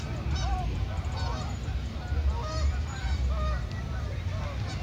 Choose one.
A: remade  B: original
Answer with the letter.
B